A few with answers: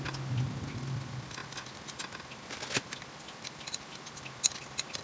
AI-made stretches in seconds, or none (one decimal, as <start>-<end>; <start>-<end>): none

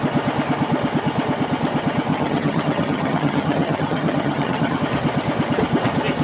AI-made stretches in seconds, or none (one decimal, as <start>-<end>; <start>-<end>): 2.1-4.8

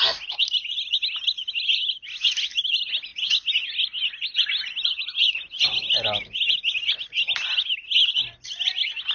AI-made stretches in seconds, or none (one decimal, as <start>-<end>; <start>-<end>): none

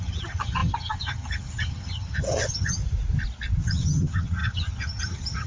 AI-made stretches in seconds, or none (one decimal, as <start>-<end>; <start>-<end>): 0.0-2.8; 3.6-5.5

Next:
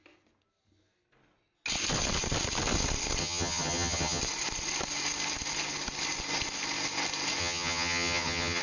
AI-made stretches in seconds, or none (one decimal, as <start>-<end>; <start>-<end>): 3.2-4.2; 7.4-8.6

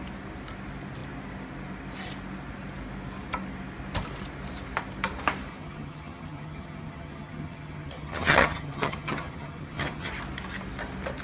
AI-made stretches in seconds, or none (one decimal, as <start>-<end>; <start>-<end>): 5.5-10.1

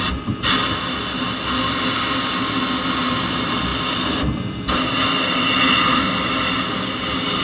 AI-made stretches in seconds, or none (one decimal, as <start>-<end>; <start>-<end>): none

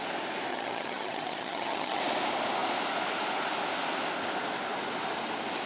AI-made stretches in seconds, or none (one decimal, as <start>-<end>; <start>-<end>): 0.5-2.0